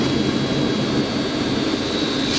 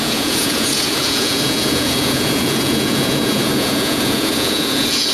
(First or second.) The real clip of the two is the first